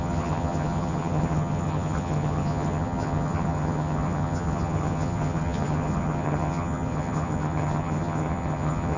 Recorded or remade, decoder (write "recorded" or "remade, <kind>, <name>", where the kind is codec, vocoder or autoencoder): remade, vocoder, HiFi-GAN